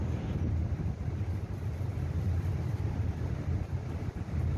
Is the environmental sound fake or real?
real